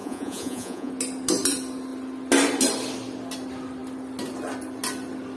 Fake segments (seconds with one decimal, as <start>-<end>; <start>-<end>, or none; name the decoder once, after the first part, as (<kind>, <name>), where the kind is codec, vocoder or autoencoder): 0.0-0.9 (vocoder, Vocos)